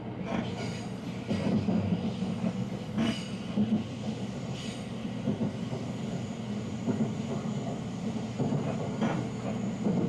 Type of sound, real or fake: real